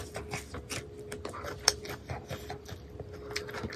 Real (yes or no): yes